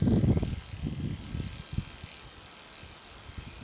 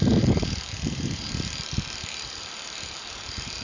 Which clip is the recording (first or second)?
first